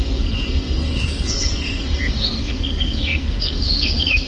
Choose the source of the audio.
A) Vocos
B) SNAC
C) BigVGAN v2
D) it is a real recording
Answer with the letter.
B